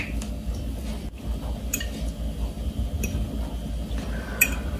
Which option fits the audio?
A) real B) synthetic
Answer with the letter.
A